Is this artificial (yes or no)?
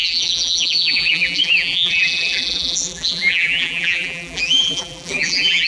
yes